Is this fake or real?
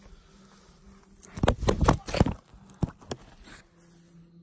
real